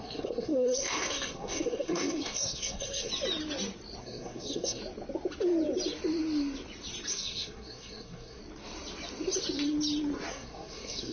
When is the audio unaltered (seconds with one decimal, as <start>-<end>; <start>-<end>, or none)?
3.1-4.0; 4.8-7.1; 8.4-10.3